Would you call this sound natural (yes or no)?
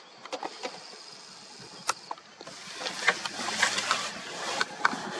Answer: yes